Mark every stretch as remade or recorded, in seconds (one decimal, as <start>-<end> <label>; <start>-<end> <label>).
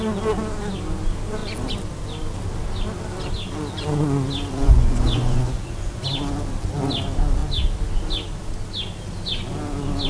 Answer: 0.0-4.6 recorded; 4.6-6.0 remade; 6.0-10.1 recorded